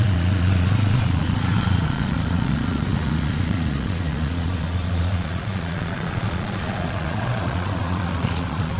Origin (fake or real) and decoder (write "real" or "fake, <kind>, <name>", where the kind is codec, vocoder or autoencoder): fake, vocoder, Vocos